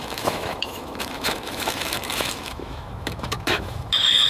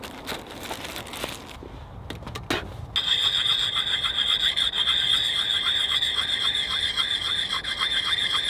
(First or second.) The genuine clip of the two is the second